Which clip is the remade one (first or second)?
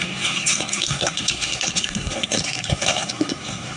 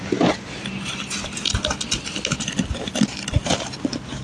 first